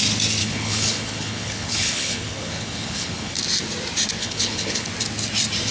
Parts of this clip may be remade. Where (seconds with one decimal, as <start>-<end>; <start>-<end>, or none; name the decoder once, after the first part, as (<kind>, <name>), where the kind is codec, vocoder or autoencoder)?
0.4-3.4 (codec, HILCodec); 4.2-4.9